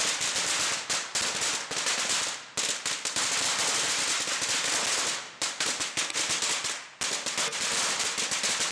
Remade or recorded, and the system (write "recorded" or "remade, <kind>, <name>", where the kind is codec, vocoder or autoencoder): recorded